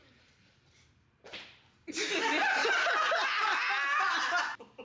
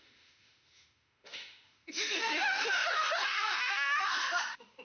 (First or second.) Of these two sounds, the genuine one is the first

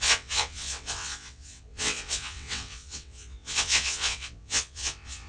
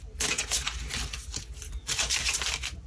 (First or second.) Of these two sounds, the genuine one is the second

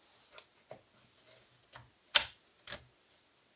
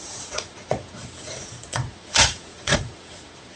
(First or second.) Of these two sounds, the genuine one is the first